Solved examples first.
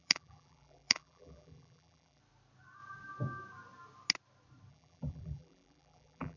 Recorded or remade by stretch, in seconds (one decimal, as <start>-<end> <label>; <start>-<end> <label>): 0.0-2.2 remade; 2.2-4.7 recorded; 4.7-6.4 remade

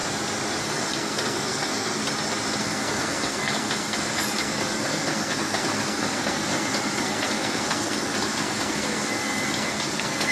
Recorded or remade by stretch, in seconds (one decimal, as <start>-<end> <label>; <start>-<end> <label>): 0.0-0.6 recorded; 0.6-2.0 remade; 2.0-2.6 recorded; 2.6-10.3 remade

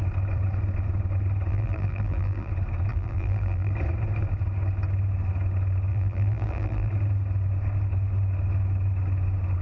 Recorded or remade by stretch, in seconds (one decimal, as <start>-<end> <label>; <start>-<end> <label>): 0.0-1.5 recorded; 1.5-2.5 remade; 2.5-2.9 recorded; 2.9-3.7 remade; 3.7-5.9 recorded; 5.9-6.9 remade; 6.9-9.6 recorded